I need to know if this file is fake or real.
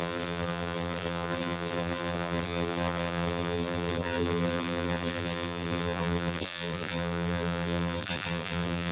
fake